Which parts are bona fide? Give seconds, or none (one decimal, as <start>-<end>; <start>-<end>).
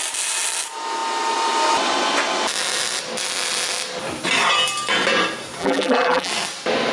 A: 0.0-5.6; 6.3-6.9